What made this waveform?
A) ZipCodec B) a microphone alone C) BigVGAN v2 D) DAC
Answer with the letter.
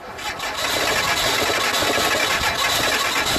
B